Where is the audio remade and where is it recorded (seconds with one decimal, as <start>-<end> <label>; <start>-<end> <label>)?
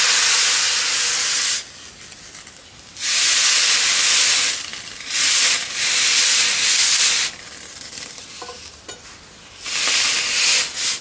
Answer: 0.0-2.9 recorded; 2.9-3.5 remade; 3.5-4.7 recorded; 4.7-8.8 remade; 8.8-11.0 recorded